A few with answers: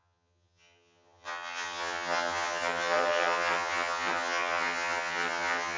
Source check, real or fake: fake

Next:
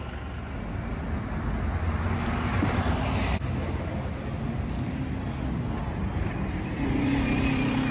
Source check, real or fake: real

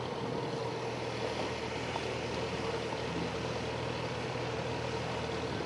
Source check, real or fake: real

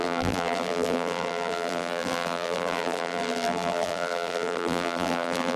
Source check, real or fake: fake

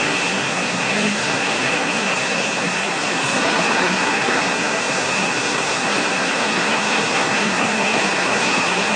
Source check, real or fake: fake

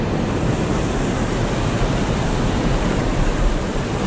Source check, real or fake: real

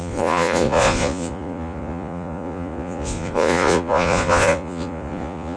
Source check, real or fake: fake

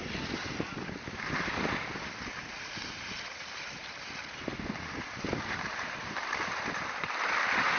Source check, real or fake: fake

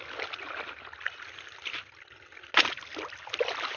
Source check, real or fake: real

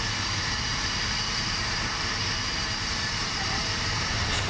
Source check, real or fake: fake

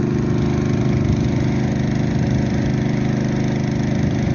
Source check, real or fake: real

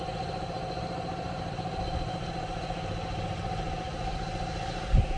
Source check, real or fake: real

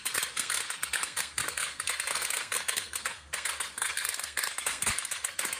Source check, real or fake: fake